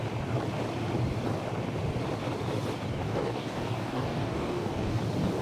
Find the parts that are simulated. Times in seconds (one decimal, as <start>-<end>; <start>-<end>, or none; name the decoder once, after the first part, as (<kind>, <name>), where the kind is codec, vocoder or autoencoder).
3.0-5.0 (codec, DAC)